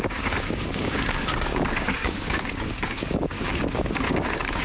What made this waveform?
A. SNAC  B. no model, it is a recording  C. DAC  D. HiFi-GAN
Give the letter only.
C